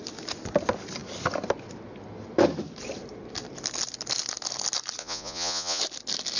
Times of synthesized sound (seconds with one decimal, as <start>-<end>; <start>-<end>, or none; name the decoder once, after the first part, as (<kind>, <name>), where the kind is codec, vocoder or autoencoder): 5.0-5.8 (vocoder, Vocos)